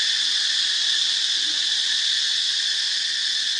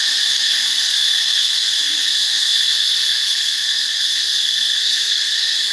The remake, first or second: second